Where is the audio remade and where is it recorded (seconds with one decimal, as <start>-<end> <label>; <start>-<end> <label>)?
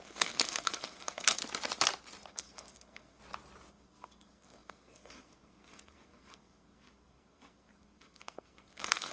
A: 0.0-1.4 remade; 1.4-2.3 recorded; 2.3-3.2 remade; 3.2-3.7 recorded; 3.7-9.1 remade